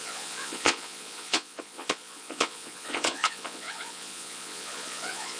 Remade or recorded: remade